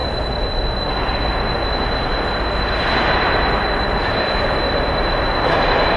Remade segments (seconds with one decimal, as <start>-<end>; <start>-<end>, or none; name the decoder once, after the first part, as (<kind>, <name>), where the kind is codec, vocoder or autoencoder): 4.0-4.7 (vocoder, BigVGAN v2)